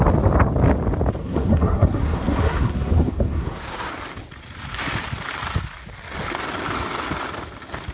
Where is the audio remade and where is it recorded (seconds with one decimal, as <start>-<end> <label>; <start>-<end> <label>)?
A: 0.0-1.2 recorded; 1.2-3.9 remade; 3.9-7.9 recorded